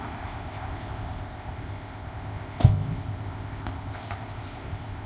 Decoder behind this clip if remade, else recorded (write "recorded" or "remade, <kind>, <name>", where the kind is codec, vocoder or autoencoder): remade, codec, ZipCodec